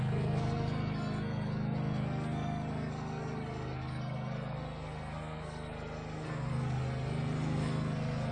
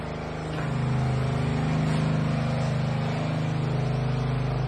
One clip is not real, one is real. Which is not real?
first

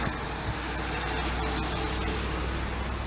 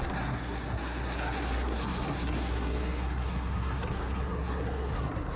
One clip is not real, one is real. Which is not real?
second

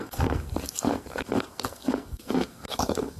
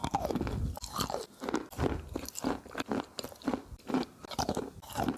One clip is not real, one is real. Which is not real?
first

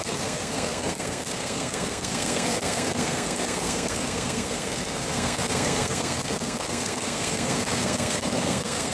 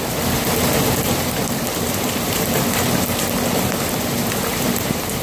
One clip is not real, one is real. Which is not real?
first